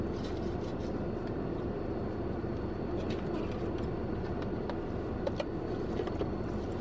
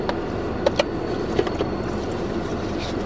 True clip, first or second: second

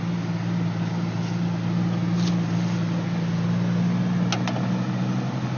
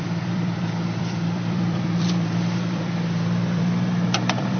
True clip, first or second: first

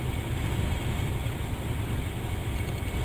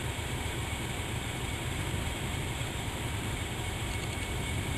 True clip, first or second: first